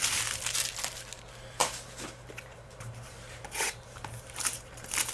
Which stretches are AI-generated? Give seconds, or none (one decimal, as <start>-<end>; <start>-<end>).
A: 1.6-5.1